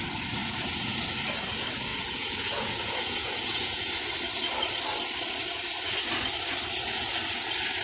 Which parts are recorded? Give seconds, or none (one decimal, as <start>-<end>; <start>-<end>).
0.0-0.4; 1.0-1.9; 4.1-7.8

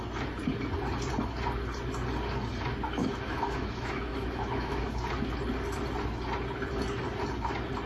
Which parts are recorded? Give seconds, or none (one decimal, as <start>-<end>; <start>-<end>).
0.0-3.0; 5.0-7.9

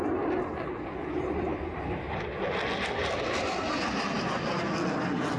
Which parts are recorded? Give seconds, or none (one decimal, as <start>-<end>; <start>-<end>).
0.0-5.4

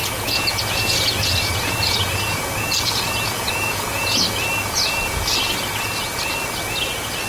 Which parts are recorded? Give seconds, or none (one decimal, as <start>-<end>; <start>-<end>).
4.2-7.3

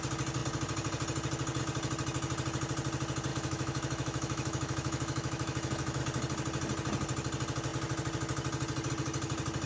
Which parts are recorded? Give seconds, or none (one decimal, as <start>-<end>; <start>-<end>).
0.0-3.3; 6.0-9.7

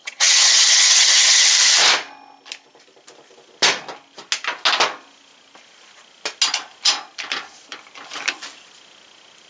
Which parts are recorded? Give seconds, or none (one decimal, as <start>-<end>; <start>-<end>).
1.5-9.5

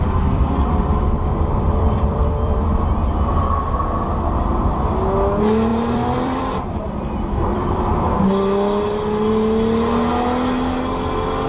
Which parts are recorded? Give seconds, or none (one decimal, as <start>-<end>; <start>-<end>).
2.6-5.7; 8.1-11.5

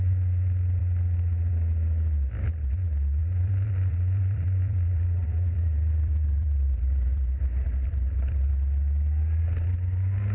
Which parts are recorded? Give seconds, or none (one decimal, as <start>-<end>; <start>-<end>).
0.0-3.2; 8.5-10.3